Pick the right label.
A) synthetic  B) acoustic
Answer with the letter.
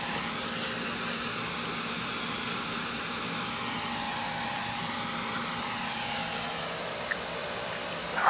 B